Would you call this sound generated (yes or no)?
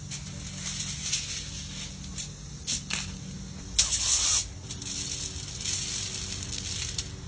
no